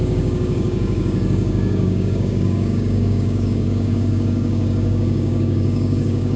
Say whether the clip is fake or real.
fake